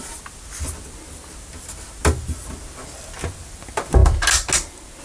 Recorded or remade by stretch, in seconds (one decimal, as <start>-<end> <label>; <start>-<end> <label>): 0.0-5.0 recorded